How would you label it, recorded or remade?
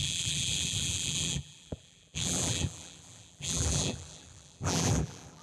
remade